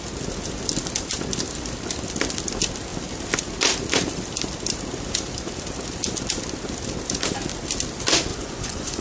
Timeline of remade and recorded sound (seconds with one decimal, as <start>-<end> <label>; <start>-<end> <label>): 0.0-8.3 recorded; 8.3-9.0 remade